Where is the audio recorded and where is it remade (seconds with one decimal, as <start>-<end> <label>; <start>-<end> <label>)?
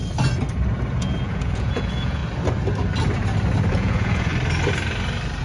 0.0-1.0 recorded; 1.0-2.2 remade; 2.2-3.7 recorded; 3.7-4.3 remade; 4.3-5.4 recorded